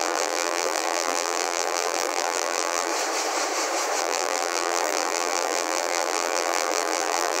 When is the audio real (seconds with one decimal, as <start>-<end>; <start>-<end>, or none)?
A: 2.9-4.0